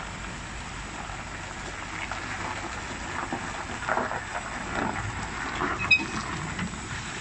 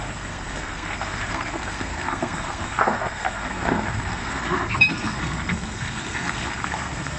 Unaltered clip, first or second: first